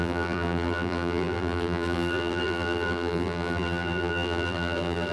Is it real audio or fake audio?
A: fake